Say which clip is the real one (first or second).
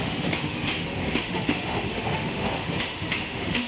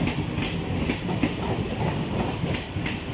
second